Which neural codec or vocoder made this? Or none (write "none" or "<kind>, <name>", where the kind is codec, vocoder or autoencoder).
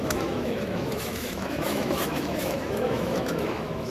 autoencoder, DAC-VAE